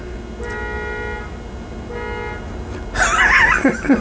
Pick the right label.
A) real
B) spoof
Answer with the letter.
A